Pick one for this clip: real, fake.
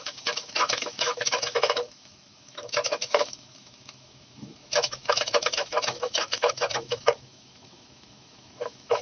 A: fake